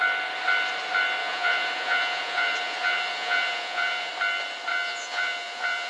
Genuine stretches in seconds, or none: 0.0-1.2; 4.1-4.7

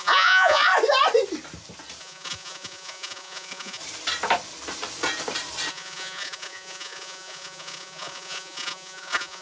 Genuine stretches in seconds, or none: 0.7-2.0; 3.8-5.7

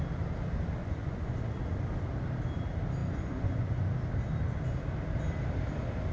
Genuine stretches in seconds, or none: 0.0-0.8; 1.4-3.0; 3.8-6.1

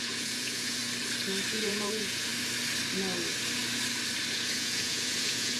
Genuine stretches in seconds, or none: 0.8-1.5; 2.3-4.3

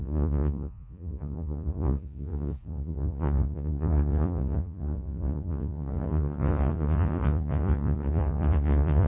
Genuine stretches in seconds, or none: none

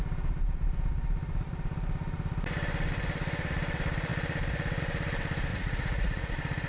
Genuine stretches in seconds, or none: 0.0-5.5; 6.3-6.7